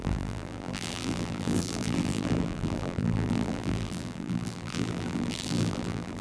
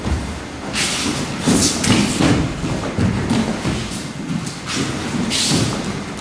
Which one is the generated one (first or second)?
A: first